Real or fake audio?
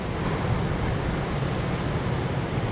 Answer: real